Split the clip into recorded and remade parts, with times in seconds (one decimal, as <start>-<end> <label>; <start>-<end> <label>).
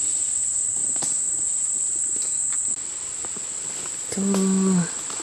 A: 0.0-5.2 recorded